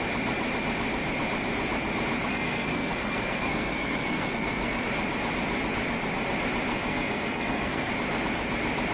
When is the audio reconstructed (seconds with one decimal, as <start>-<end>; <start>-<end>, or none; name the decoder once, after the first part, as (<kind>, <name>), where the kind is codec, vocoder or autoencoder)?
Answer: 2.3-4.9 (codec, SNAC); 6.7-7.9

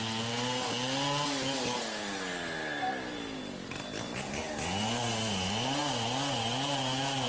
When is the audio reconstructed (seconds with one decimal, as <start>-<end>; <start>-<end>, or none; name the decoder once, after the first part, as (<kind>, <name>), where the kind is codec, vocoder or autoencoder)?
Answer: none

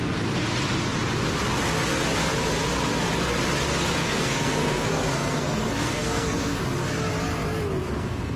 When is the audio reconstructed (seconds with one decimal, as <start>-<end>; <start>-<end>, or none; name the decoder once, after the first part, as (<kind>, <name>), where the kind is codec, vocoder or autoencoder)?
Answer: 4.0-6.6 (codec, SNAC); 7.8-8.4

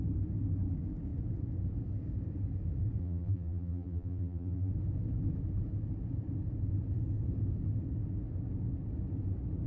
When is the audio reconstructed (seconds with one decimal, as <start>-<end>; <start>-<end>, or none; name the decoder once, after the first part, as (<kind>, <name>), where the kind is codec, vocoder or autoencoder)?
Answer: 3.0-4.7 (vocoder, BigVGAN v2)

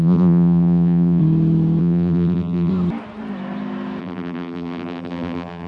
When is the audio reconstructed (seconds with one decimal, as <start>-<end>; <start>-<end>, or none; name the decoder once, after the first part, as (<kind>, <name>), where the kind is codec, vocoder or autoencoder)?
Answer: 0.0-1.2 (vocoder, BigVGAN v2); 1.8-2.7; 4.0-5.7

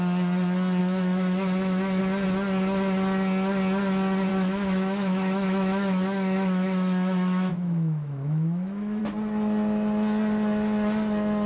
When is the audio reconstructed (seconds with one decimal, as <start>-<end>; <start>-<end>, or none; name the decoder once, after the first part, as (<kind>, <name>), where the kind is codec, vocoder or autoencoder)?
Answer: 0.8-2.0 (autoencoder, DAC-VAE); 4.3-9.0